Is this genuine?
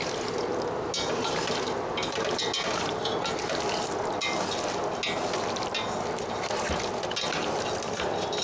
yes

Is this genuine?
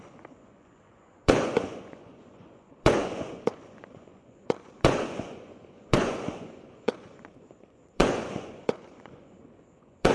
no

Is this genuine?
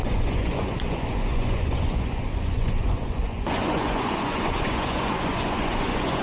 no